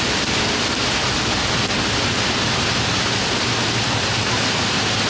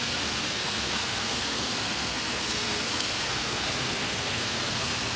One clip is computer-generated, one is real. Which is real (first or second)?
first